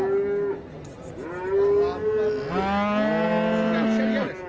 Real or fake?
real